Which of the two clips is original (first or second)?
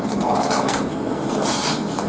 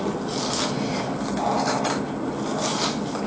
second